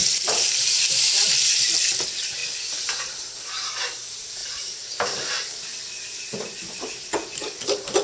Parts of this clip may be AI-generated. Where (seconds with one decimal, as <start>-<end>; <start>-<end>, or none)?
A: 0.0-1.7; 4.4-5.6